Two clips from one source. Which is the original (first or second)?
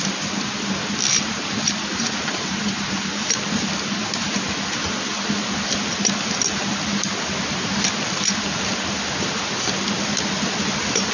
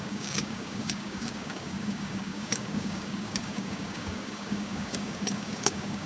first